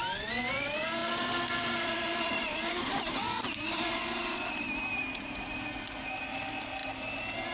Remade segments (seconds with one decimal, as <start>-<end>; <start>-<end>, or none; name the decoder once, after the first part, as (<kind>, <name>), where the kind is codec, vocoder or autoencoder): 1.0-5.5 (vocoder, BigVGAN v2)